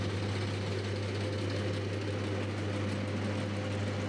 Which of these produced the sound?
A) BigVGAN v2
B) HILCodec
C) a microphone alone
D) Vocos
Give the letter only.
C